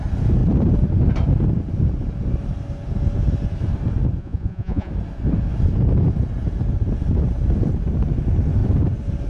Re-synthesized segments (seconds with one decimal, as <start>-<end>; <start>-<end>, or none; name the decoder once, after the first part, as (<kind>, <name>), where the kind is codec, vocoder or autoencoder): 4.2-4.9 (vocoder, Vocos)